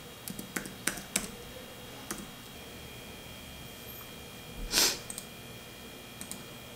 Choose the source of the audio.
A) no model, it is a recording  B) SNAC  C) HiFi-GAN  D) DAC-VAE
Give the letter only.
A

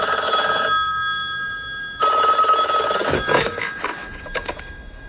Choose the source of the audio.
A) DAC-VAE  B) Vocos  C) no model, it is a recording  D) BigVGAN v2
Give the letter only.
A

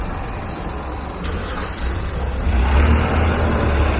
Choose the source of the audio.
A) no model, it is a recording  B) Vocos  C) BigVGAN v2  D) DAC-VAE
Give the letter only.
A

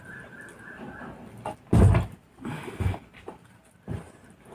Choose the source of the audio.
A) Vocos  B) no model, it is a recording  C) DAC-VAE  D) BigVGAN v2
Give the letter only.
B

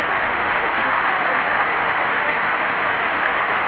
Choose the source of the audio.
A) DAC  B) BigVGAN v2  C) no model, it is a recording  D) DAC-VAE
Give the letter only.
D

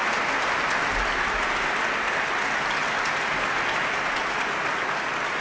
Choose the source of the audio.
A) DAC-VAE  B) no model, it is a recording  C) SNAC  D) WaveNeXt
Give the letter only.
B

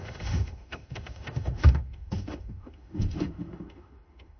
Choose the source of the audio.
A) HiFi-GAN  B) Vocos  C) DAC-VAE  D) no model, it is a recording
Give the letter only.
C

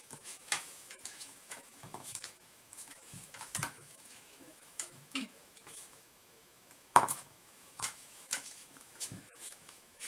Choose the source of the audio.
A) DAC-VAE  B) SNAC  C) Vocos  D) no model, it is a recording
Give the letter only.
A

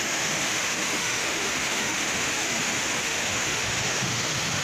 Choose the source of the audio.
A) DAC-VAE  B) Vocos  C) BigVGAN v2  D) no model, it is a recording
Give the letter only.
A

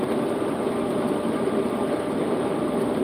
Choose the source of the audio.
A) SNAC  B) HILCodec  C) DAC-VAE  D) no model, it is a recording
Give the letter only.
D